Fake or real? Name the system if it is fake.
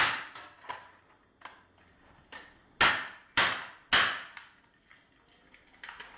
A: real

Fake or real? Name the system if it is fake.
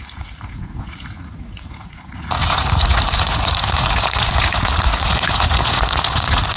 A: fake, vocoder, Vocos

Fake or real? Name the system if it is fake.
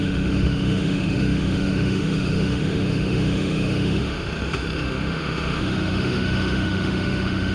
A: fake, autoencoder, DAC-VAE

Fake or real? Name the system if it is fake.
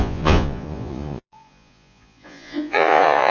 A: fake, vocoder, Vocos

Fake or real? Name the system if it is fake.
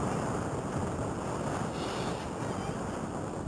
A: real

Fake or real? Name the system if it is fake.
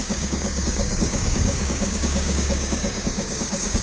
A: fake, codec, DAC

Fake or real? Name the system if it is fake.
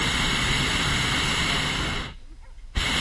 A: real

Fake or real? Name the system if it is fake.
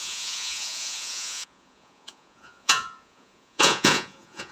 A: fake, vocoder, Vocos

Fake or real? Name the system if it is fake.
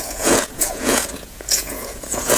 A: fake, vocoder, Vocos